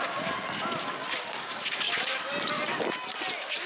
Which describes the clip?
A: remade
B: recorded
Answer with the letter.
B